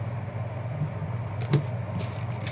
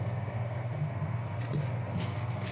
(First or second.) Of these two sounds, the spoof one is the second